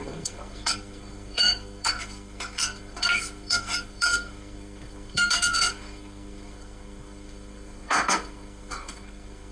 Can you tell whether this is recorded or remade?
remade